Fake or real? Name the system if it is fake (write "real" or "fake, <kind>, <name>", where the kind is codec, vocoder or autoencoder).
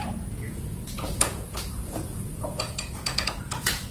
fake, vocoder, Vocos